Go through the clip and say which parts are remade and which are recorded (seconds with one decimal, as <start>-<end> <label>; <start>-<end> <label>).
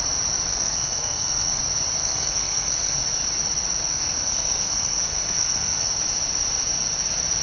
0.0-0.5 recorded; 0.5-1.6 remade; 1.6-2.0 recorded; 2.0-3.0 remade; 3.0-3.9 recorded; 3.9-5.9 remade; 5.9-7.4 recorded